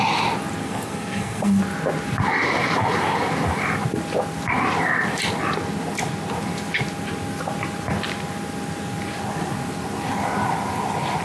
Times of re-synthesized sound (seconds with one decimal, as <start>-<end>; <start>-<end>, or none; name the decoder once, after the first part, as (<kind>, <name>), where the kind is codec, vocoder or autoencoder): 0.6-1.6 (codec, SNAC)